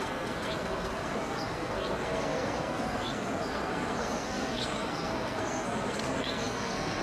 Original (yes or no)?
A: no